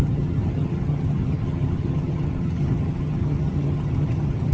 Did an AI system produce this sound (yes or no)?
yes